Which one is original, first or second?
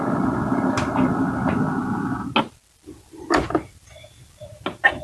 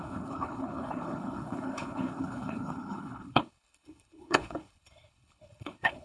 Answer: first